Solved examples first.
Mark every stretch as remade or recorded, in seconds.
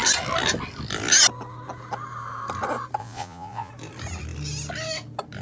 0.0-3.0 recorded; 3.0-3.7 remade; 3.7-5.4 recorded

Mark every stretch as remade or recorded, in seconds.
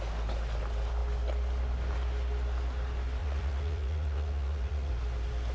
0.0-3.2 recorded; 3.2-4.9 remade; 4.9-5.5 recorded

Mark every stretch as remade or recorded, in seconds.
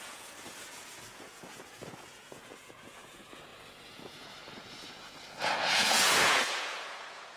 0.0-7.4 remade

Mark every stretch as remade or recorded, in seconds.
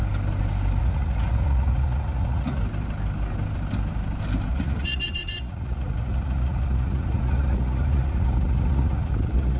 0.0-0.8 recorded; 0.8-2.6 remade; 2.6-4.5 recorded; 4.5-9.6 remade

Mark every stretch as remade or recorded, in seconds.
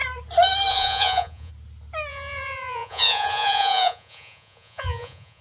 0.0-0.7 recorded; 0.7-1.5 remade; 1.5-2.1 recorded; 2.1-5.4 remade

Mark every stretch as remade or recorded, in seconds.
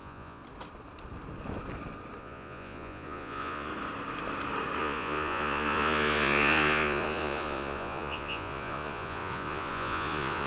0.0-0.4 remade; 0.4-2.2 recorded; 2.2-3.7 remade; 3.7-4.8 recorded; 4.8-10.5 remade